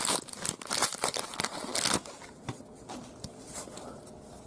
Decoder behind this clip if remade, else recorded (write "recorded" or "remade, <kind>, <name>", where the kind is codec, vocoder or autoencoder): recorded